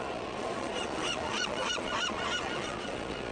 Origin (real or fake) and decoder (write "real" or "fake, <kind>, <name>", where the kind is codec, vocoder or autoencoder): fake, vocoder, Vocos